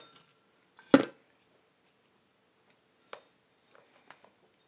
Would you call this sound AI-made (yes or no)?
no